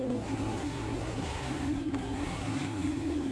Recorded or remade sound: remade